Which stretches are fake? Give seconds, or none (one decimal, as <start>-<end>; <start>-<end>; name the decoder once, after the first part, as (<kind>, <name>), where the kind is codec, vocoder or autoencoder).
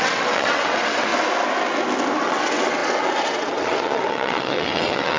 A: 0.0-1.1 (vocoder, WaveNeXt); 2.2-5.2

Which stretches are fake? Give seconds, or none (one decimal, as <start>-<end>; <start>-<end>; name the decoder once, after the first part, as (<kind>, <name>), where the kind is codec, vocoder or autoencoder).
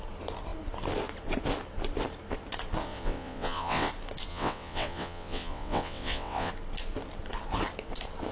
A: 2.8-3.9 (vocoder, WaveNeXt); 4.3-6.5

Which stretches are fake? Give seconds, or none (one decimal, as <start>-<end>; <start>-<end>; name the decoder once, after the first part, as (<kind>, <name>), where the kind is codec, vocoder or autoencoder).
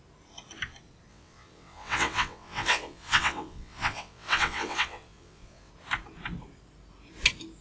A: 1.1-5.7 (vocoder, WaveNeXt)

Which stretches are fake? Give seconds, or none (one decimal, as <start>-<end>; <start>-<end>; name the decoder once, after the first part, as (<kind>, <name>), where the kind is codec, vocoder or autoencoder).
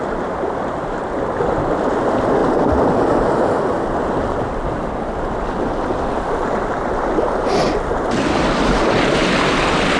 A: none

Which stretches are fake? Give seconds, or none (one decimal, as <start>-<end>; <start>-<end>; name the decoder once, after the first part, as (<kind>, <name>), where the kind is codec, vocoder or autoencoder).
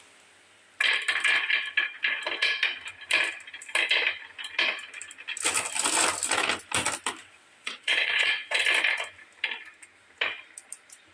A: 7.2-8.6 (vocoder, WaveNeXt)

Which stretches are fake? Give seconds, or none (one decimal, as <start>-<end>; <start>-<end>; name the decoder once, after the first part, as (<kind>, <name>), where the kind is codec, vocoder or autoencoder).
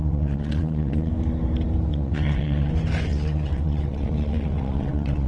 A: 0.0-1.1 (vocoder, WaveNeXt); 1.9-2.7; 3.1-5.3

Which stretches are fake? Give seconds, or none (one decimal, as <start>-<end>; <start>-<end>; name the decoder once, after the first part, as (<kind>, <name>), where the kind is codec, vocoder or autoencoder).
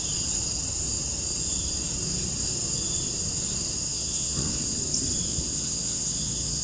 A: 3.9-4.8 (vocoder, WaveNeXt); 5.3-6.6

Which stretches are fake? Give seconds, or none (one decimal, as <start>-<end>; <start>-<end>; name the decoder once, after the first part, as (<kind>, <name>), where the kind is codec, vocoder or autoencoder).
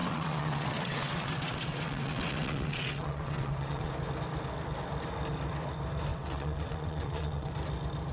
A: 0.0-3.9 (vocoder, WaveNeXt); 6.1-7.5